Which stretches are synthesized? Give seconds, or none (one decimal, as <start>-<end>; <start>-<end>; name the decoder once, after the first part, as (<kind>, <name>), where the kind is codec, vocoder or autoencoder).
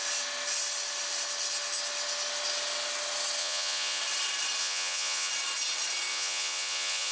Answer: 3.4-4.0 (vocoder, Vocos); 4.6-5.3; 6.1-7.1